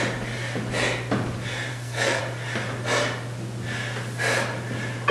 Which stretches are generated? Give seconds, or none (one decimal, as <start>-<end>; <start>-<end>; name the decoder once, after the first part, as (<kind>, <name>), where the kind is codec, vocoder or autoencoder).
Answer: 1.7-2.2 (codec, SNAC)